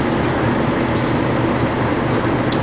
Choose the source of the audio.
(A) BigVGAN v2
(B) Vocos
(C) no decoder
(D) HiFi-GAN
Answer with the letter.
C